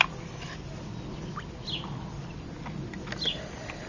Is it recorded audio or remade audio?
recorded